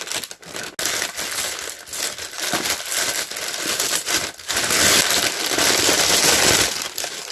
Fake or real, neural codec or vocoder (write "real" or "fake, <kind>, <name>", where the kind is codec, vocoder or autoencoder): real